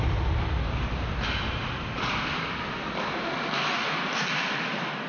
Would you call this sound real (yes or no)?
yes